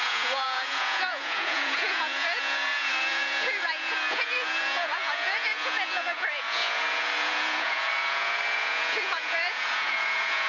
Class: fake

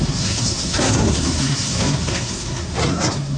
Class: fake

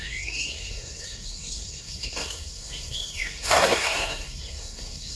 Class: fake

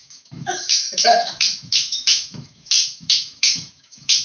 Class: fake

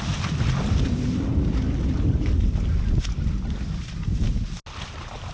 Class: real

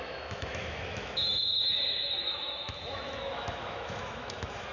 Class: fake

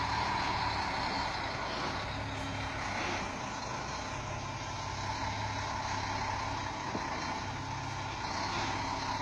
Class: real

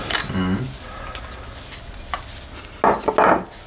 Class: real